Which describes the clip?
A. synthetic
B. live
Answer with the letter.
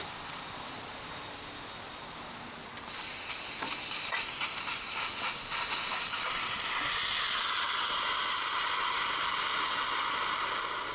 B